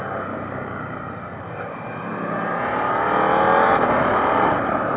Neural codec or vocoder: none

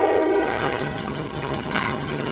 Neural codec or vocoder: vocoder, HiFi-GAN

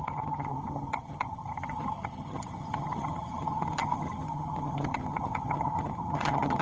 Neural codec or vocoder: vocoder, HiFi-GAN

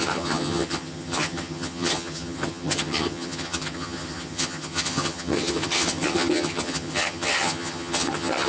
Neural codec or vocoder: vocoder, HiFi-GAN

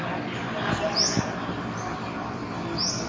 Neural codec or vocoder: none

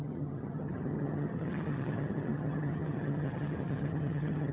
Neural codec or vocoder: vocoder, HiFi-GAN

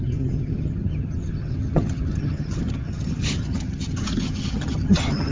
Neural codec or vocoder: vocoder, HiFi-GAN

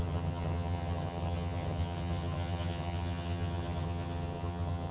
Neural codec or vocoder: vocoder, HiFi-GAN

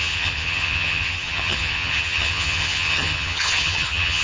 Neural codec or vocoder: vocoder, HiFi-GAN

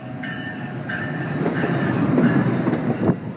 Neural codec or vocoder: none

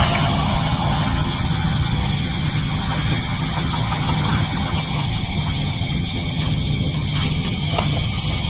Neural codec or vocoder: vocoder, HiFi-GAN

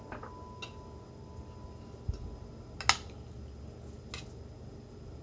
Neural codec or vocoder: none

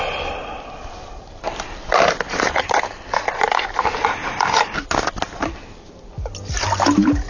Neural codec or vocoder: none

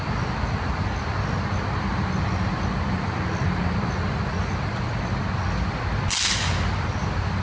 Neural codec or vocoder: none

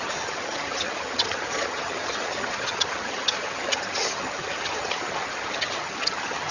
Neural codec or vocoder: vocoder, HiFi-GAN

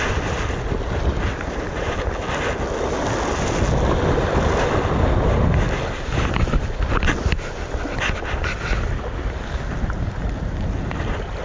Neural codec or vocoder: none